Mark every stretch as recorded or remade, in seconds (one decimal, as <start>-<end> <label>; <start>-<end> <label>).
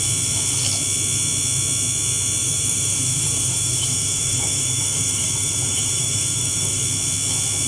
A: 0.0-2.4 recorded; 2.4-6.8 remade; 6.8-7.7 recorded